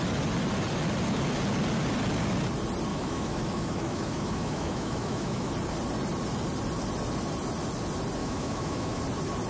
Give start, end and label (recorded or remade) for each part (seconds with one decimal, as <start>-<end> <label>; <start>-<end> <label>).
0.0-2.9 recorded; 2.9-5.5 remade; 5.5-8.2 recorded; 8.2-9.0 remade; 9.0-9.5 recorded